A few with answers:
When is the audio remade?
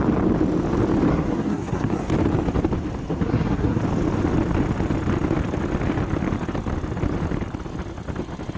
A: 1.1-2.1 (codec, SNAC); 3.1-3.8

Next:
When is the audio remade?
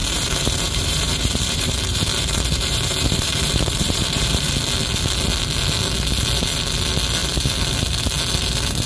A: 0.0-4.5 (vocoder, BigVGAN v2)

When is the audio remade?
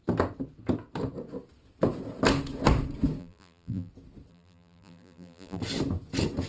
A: 3.2-3.9 (vocoder, BigVGAN v2); 4.3-5.6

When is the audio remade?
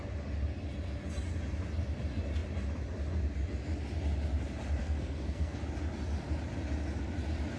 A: 4.8-5.6 (codec, SNAC)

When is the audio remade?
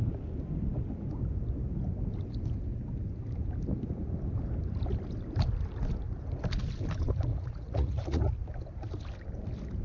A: 7.3-8.3 (vocoder, Vocos)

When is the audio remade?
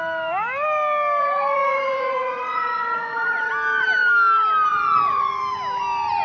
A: 1.2-3.5 (vocoder, Vocos); 4.7-5.4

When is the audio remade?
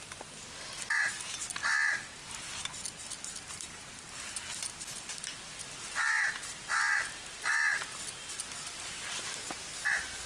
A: none